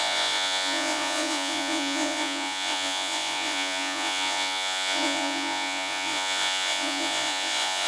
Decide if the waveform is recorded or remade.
remade